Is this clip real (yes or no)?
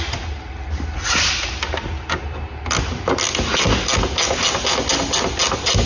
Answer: yes